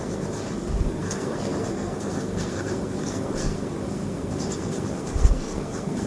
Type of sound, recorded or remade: remade